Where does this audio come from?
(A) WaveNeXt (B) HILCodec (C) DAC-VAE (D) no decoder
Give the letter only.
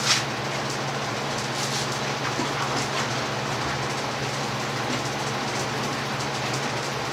D